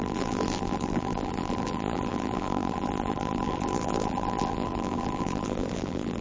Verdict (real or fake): fake